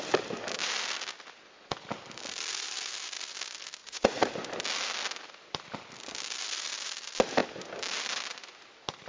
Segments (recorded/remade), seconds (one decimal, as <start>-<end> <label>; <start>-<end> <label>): 0.0-3.8 recorded; 3.8-4.3 remade; 4.3-9.1 recorded

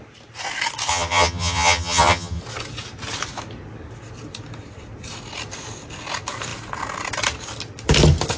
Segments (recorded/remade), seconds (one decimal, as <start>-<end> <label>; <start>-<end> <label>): 0.0-0.9 recorded; 0.9-2.4 remade; 2.4-8.4 recorded

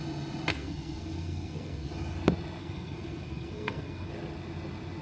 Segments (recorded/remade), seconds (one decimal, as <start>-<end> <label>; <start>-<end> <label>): 0.0-0.5 recorded; 0.5-1.9 remade; 1.9-2.6 recorded; 2.6-4.1 remade; 4.1-5.0 recorded

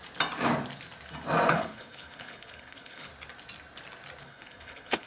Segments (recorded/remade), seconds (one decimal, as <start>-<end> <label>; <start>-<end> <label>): 0.0-1.5 recorded; 1.5-3.1 remade; 3.1-4.2 recorded; 4.2-5.1 remade

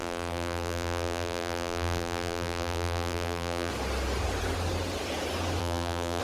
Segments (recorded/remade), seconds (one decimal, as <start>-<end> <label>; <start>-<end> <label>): 0.0-3.7 remade; 3.7-5.6 recorded; 5.6-6.2 remade

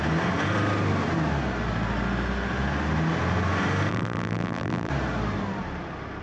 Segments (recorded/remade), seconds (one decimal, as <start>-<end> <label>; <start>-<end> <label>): 0.0-3.9 recorded; 3.9-4.9 remade; 4.9-6.2 recorded